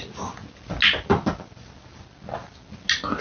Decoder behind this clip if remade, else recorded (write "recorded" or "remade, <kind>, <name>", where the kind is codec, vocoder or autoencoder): recorded